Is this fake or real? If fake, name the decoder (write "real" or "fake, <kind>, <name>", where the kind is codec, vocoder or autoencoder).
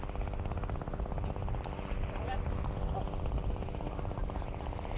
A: real